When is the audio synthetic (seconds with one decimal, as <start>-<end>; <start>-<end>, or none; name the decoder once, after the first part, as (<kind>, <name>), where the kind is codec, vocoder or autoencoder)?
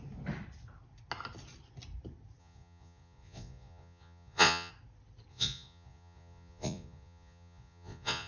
2.4-4.7 (vocoder, Vocos); 5.3-8.3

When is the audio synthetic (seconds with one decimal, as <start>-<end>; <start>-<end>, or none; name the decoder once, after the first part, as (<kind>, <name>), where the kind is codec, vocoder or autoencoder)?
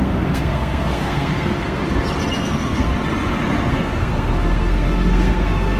0.0-1.8 (codec, SNAC); 2.4-2.9; 3.7-5.8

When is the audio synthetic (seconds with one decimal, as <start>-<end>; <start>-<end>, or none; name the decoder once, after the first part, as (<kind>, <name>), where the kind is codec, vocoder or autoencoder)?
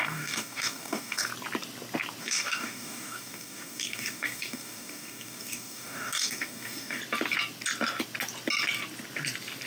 0.0-1.3 (codec, DAC); 2.2-7.0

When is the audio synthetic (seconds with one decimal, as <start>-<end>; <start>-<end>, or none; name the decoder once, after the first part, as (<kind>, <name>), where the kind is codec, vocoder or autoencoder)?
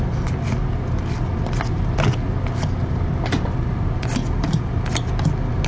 none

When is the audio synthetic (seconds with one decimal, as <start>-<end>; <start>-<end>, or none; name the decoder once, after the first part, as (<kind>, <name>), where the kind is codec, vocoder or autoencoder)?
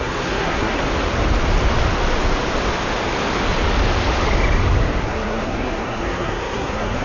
0.0-0.8 (codec, SNAC); 5.0-7.0